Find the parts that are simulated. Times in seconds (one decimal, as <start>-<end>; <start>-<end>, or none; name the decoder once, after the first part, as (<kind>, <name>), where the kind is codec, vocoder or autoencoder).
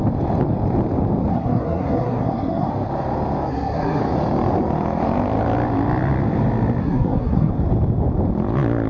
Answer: 1.3-2.7 (codec, SNAC); 3.5-4.0; 6.8-7.5